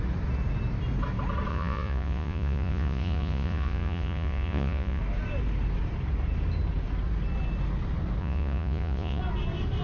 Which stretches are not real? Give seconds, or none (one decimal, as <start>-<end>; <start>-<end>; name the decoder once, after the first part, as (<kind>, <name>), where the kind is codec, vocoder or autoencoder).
1.5-5.0 (vocoder, Vocos); 8.2-9.2